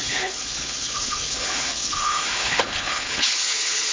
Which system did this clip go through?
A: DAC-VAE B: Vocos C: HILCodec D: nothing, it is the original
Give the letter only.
C